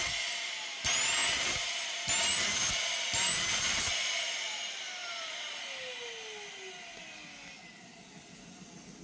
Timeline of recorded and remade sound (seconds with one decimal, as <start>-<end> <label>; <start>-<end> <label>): 0.0-9.0 recorded